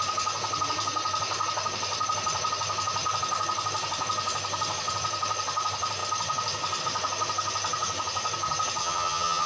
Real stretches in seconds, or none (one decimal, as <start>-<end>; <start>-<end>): 0.0-8.8